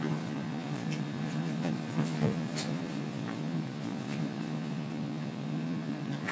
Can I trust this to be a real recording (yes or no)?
no